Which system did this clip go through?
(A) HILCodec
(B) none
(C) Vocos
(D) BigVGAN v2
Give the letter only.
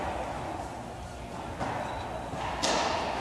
B